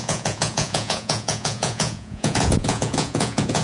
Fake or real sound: fake